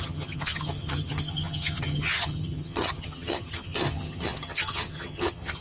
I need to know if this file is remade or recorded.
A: remade